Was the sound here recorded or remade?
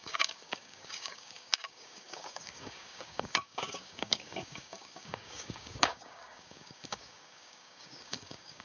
remade